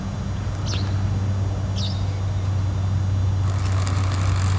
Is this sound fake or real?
real